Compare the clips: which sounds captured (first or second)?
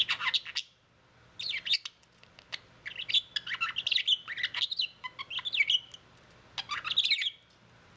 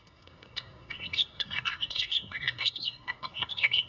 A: first